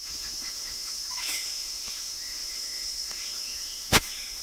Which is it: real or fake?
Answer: fake